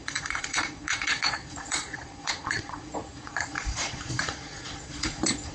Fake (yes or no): yes